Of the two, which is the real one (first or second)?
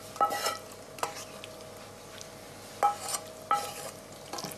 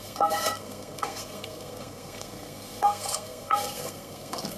first